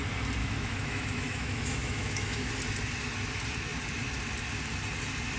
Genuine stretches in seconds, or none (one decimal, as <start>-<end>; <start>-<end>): 0.0-0.4; 2.5-5.4